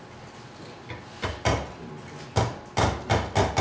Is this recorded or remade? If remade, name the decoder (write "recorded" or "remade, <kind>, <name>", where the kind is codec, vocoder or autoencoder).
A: recorded